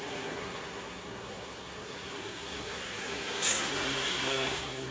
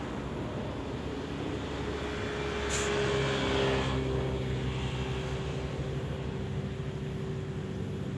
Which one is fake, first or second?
first